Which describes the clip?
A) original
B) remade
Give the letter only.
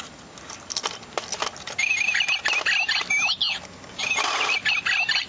A